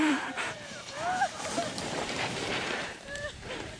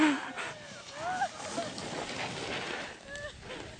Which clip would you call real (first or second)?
second